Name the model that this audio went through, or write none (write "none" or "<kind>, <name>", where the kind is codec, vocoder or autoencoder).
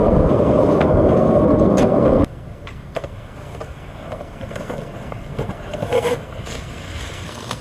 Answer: codec, SNAC